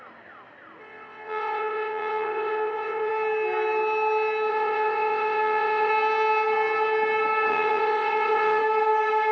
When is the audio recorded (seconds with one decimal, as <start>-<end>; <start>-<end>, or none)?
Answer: 0.0-0.8; 3.1-4.5; 5.9-7.5; 8.6-9.3

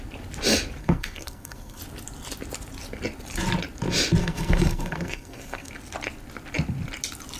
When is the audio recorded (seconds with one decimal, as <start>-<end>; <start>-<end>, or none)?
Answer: 0.0-0.8; 1.8-4.2; 5.7-7.4

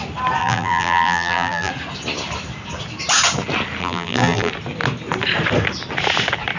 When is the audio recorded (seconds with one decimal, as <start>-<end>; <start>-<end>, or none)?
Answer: 0.0-0.4; 1.7-3.8; 4.5-6.6

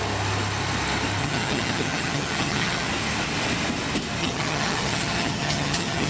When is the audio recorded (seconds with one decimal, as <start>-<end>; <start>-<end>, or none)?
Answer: 0.0-1.2; 2.9-4.2

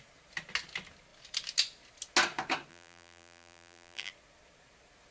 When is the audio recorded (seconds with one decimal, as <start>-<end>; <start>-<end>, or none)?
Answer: 0.0-2.7; 4.1-5.1